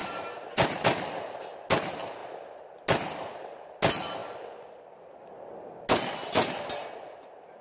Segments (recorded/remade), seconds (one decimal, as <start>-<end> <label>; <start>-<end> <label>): 0.0-0.5 remade; 0.5-7.6 recorded